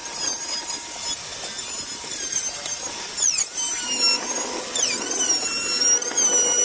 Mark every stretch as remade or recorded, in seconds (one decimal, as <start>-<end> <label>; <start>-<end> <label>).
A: 0.0-6.6 recorded